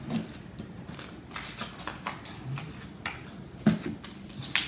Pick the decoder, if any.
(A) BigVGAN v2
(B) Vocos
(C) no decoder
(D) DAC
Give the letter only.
C